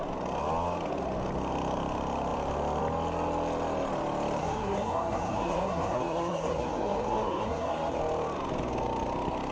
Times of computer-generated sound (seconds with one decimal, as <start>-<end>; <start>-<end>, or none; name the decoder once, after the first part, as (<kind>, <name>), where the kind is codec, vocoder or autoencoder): 4.4-8.0 (codec, SNAC)